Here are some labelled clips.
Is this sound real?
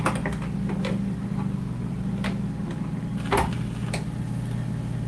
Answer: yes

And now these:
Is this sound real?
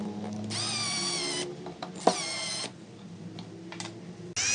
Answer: yes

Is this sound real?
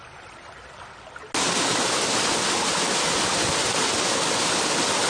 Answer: yes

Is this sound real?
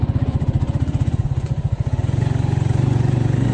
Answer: no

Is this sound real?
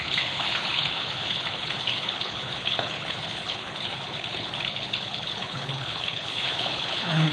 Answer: no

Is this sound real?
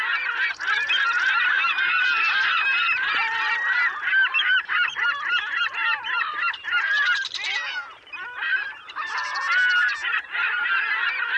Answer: no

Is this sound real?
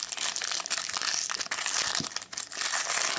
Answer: yes